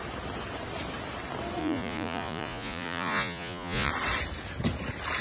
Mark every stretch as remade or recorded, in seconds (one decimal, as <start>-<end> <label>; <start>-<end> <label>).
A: 0.0-1.6 recorded; 1.6-3.9 remade; 3.9-5.2 recorded